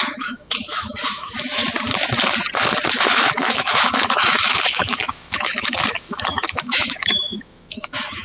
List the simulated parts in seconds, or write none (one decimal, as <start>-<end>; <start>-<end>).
0.0-1.6; 2.9-8.2